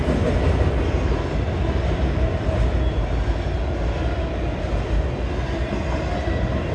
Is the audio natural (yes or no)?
yes